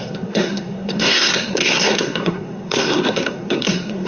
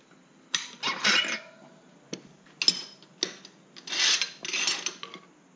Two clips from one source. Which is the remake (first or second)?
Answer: first